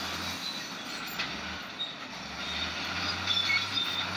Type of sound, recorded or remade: recorded